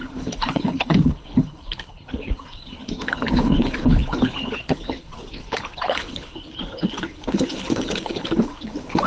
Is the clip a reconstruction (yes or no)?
yes